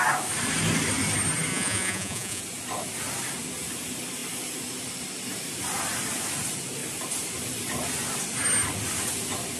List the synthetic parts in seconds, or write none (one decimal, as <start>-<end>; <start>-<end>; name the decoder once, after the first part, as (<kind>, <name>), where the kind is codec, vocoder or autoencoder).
1.5-2.4 (vocoder, Vocos)

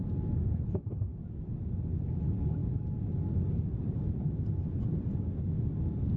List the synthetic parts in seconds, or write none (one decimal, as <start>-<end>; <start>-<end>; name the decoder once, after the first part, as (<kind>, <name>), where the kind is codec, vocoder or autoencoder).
none

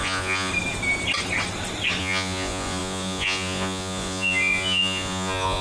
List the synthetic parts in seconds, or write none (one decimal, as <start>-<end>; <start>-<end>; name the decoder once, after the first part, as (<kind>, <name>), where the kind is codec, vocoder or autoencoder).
0.0-0.5 (vocoder, Vocos); 2.0-5.6

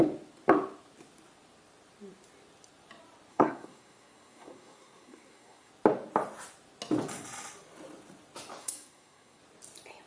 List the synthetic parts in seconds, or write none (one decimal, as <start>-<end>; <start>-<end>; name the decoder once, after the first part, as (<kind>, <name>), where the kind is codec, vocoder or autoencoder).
3.3-5.7 (codec, SNAC); 8.6-9.4

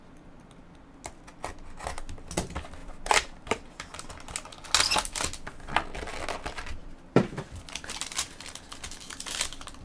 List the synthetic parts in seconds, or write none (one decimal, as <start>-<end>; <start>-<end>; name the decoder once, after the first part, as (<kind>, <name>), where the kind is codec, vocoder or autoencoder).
2.8-4.1 (vocoder, BigVGAN v2); 6.8-7.4

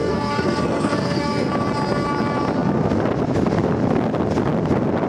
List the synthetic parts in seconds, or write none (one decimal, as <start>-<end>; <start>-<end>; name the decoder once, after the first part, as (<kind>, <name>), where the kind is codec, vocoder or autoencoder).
0.0-1.5 (codec, SNAC)